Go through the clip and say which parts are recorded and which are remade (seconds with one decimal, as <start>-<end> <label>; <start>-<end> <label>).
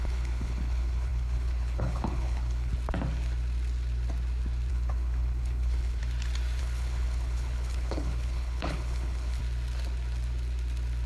0.0-2.7 remade; 2.7-4.7 recorded; 4.7-6.0 remade; 6.0-6.6 recorded; 6.6-9.4 remade; 9.4-11.1 recorded